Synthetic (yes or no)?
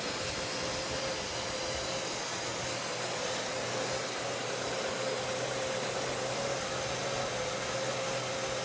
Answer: no